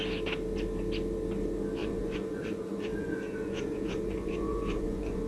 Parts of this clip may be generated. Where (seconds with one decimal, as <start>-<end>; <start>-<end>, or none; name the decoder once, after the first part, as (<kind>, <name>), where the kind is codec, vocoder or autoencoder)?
1.8-5.3 (vocoder, Vocos)